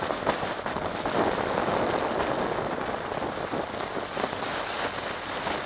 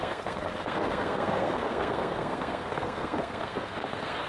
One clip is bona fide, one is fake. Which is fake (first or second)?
second